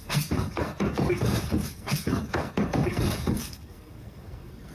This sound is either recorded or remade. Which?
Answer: remade